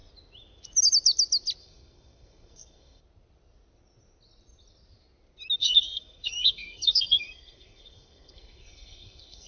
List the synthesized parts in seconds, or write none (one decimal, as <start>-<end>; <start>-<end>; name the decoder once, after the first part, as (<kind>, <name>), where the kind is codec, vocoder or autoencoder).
1.6-3.0 (codec, SNAC); 5.6-9.5